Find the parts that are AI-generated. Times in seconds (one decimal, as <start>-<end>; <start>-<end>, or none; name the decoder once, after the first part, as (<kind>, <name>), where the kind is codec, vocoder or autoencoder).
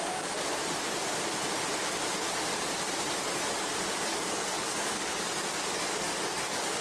4.1-6.8 (codec, DAC)